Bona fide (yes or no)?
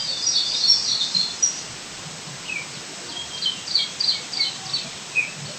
yes